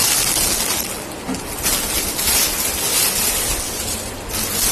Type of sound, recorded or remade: recorded